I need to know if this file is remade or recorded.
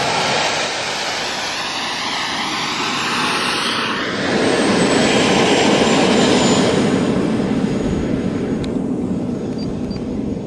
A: recorded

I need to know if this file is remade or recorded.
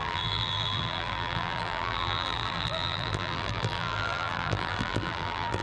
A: remade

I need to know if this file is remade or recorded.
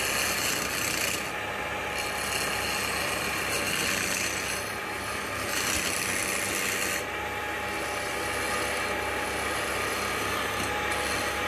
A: recorded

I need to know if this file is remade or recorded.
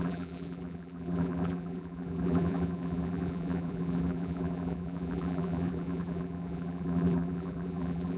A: remade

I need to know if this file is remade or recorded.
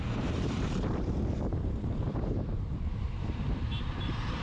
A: remade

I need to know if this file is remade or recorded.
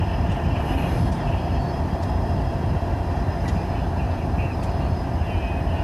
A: remade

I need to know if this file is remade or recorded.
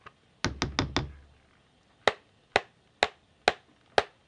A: recorded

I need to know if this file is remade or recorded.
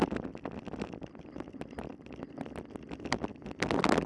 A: recorded